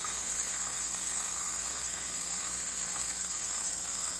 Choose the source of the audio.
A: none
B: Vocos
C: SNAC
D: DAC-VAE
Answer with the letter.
C